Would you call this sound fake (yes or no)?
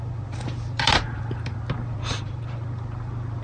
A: no